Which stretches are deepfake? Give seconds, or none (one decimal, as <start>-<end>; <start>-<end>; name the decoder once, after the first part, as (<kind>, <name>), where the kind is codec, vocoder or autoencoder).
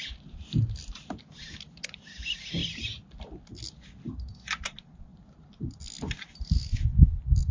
none